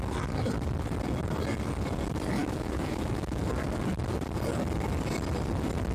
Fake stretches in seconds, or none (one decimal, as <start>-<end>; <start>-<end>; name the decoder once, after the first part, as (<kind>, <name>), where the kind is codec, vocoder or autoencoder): 2.4-3.4 (autoencoder, DAC-VAE)